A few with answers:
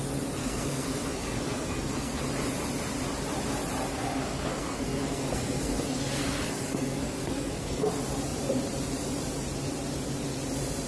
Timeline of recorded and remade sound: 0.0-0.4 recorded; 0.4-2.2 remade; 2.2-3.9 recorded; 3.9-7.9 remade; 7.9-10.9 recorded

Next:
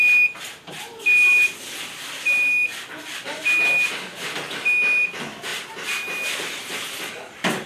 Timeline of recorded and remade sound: 0.0-7.7 recorded

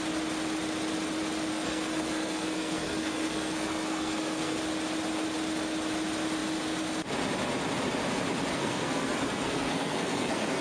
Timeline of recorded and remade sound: 0.0-1.5 recorded; 1.5-4.6 remade; 4.6-8.5 recorded; 8.5-10.6 remade

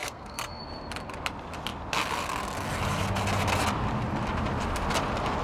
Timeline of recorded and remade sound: 0.0-0.6 remade; 0.6-5.4 recorded

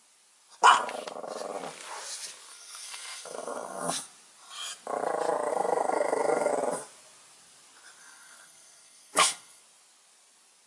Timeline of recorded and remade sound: 0.0-2.5 recorded; 2.5-3.9 remade; 3.9-5.5 recorded; 5.5-6.5 remade; 6.5-8.0 recorded; 8.0-9.6 remade; 9.6-10.7 recorded

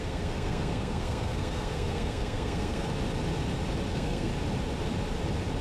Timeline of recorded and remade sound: 0.0-2.9 remade; 2.9-3.9 recorded; 3.9-4.3 remade; 4.3-5.6 recorded